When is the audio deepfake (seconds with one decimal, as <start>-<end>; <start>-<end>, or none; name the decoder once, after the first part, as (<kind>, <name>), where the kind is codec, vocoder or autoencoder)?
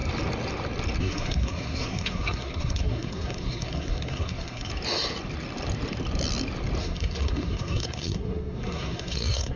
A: 1.0-4.7 (codec, SNAC); 6.8-9.6